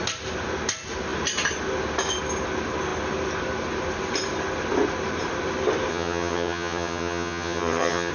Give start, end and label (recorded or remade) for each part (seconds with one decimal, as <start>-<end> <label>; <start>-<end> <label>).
0.0-5.9 recorded; 5.9-8.1 remade

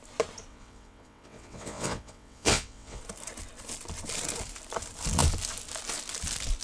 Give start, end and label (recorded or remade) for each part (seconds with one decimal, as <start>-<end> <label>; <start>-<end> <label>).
0.0-0.5 recorded; 0.5-3.0 remade; 3.0-6.6 recorded

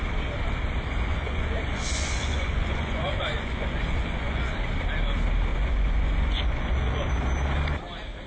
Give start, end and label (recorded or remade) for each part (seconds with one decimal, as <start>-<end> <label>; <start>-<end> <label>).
0.0-1.1 recorded; 1.1-4.5 remade; 4.5-5.5 recorded; 5.5-7.1 remade; 7.1-8.3 recorded

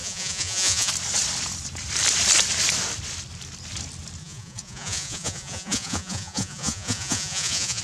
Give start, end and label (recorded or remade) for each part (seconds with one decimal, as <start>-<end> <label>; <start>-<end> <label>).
0.0-0.9 remade; 0.9-4.2 recorded; 4.2-7.8 remade

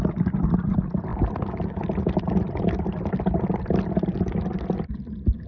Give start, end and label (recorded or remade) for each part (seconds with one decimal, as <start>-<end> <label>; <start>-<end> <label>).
0.0-1.1 recorded; 1.1-3.2 remade; 3.2-5.5 recorded

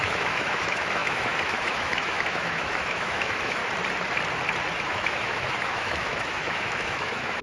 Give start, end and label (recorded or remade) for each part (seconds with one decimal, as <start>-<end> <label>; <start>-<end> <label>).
0.0-3.6 remade; 3.6-4.8 recorded; 4.8-7.4 remade

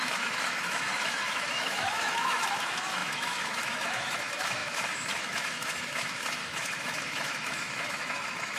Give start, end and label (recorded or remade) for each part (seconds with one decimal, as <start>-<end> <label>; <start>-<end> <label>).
0.0-8.6 remade

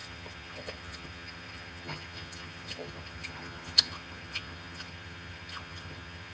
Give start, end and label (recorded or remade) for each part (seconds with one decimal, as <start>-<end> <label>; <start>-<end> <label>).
0.0-6.3 remade